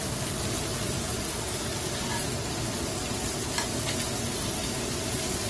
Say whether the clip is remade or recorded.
recorded